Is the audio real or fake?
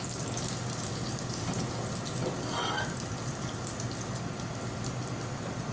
real